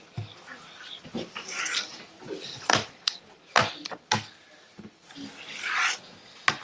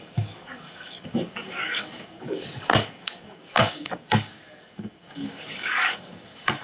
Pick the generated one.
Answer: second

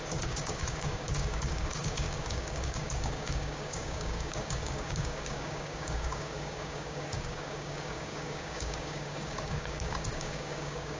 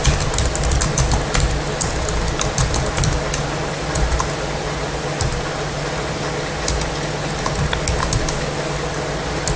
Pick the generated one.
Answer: first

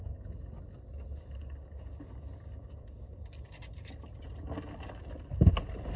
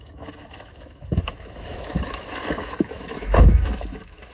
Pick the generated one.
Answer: second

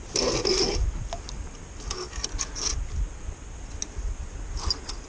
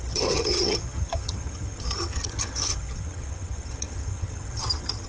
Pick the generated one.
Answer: second